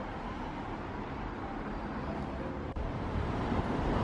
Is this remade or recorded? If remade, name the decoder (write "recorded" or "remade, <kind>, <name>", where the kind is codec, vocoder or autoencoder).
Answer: remade, vocoder, BigVGAN v2